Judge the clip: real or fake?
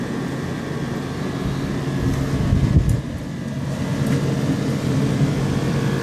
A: real